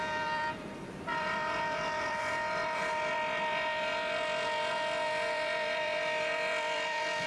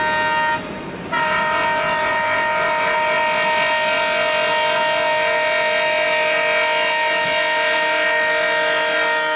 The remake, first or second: first